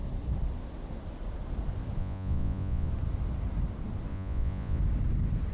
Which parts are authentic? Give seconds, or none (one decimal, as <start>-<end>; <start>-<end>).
0.0-2.0; 2.9-4.1; 4.8-5.5